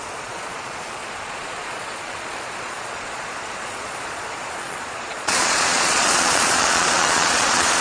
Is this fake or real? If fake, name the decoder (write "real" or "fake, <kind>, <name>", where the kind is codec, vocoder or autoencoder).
fake, vocoder, Vocos